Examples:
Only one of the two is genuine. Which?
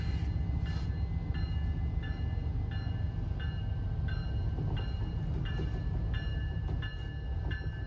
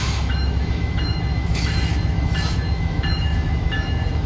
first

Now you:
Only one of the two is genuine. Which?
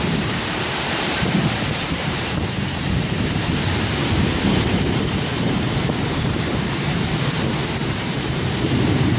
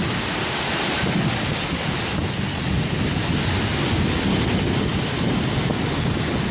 second